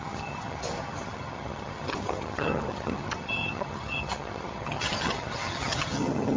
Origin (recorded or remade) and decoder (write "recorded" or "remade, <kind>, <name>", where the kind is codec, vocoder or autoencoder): remade, vocoder, HiFi-GAN